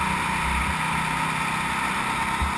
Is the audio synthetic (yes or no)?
no